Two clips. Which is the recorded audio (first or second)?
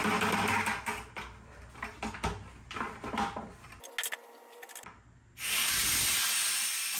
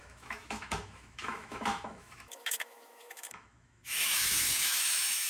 first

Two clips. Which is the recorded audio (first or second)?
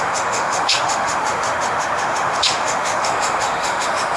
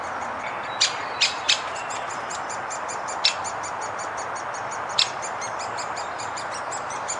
second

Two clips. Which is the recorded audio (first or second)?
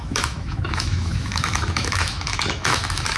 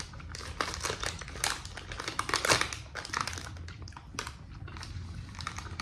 second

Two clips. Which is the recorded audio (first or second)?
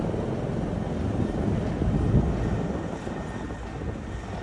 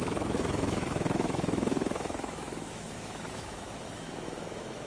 first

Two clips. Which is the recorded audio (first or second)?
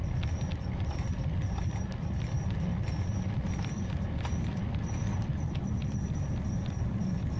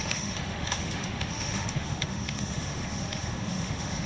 first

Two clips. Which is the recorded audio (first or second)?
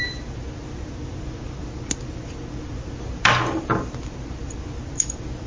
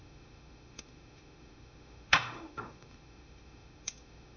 first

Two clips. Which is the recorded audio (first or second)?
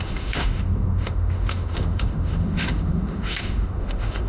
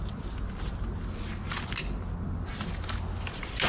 second